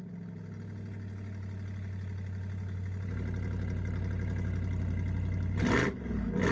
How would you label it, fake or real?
real